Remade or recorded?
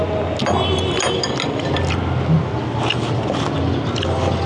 recorded